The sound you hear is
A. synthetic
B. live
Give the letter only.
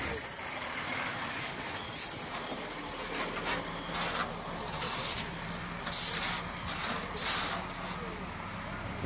B